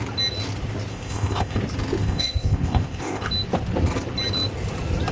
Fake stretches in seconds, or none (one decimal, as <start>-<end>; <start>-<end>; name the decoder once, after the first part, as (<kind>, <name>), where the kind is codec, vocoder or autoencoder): 0.9-1.6 (codec, ZipCodec); 2.0-3.3